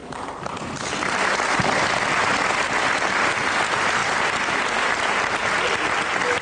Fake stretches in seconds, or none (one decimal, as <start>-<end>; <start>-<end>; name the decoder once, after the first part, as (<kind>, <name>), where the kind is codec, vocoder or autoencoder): none